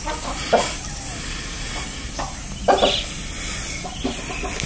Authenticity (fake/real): real